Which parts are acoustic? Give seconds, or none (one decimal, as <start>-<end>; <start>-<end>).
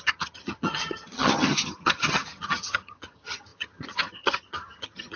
none